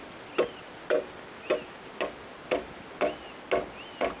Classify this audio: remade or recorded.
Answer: recorded